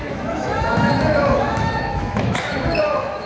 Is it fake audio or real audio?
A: fake